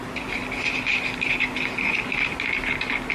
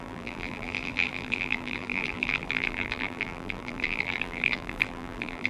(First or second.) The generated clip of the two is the second